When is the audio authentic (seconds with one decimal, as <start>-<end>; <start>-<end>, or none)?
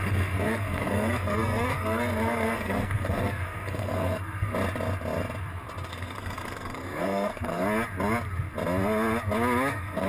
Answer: 4.5-5.9; 7.6-9.7